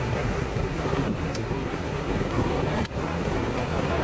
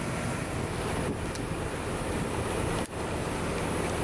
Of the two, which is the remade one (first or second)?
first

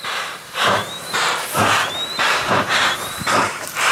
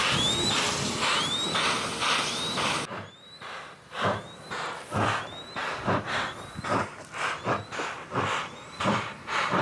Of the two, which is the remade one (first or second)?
first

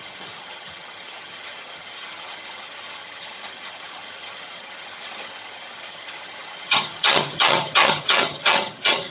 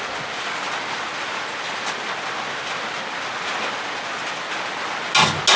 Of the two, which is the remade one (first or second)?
first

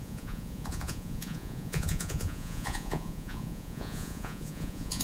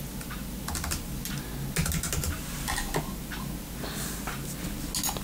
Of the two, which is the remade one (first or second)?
first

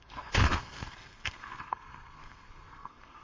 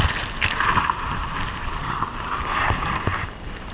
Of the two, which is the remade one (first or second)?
first